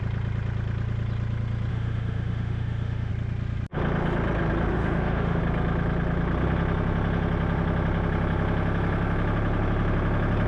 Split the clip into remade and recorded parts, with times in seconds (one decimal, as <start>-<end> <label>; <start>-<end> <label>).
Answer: 0.0-1.7 recorded; 1.7-3.1 remade; 3.1-4.7 recorded; 4.7-5.4 remade; 5.4-10.5 recorded